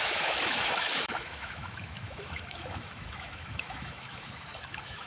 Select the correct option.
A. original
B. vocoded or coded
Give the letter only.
B